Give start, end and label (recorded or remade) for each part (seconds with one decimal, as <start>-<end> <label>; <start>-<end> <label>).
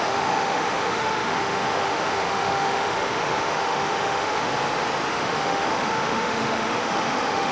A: 0.0-4.5 remade; 4.5-5.1 recorded; 5.1-7.5 remade